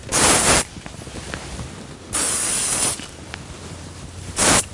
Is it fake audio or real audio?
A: real